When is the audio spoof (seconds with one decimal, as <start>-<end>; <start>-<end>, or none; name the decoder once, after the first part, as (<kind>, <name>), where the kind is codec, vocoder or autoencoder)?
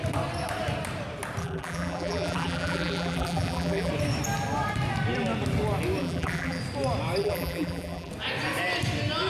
1.4-3.9 (vocoder, BigVGAN v2); 6.0-6.6; 7.2-8.1